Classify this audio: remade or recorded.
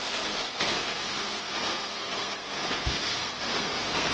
remade